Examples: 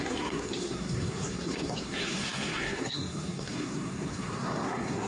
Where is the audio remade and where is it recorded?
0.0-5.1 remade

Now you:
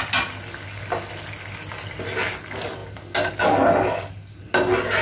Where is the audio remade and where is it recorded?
0.0-5.0 recorded

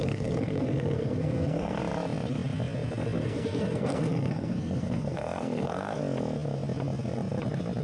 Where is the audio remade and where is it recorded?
0.0-1.8 remade; 1.8-3.2 recorded; 3.2-6.0 remade; 6.0-7.8 recorded